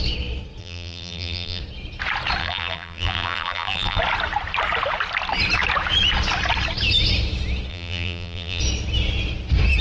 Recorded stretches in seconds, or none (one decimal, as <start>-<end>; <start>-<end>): 0.0-0.6; 1.6-2.4; 4.0-7.7; 8.6-9.8